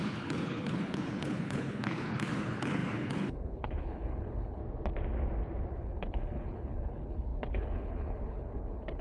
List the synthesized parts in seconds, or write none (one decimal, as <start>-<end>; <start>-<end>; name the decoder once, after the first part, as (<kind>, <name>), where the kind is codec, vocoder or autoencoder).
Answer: 0.0-4.6 (codec, HILCodec); 5.7-9.0